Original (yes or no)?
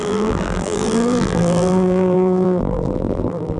no